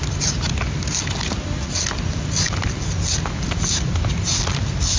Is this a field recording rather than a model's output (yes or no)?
yes